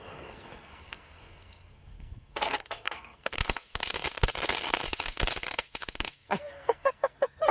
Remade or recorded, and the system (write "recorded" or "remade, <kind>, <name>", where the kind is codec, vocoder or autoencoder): remade, codec, SNAC